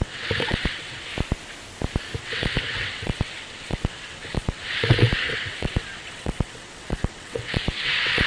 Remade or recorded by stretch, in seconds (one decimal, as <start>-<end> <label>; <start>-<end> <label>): 0.0-1.1 remade; 1.1-2.2 recorded; 2.2-8.3 remade